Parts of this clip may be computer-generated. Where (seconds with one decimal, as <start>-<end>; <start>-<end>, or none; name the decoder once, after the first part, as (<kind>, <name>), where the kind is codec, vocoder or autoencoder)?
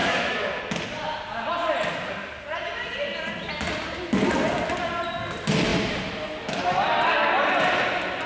0.0-0.6 (autoencoder, DAC-VAE)